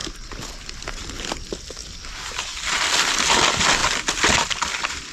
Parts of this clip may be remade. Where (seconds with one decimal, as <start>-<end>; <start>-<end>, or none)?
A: 1.8-3.3; 3.8-5.1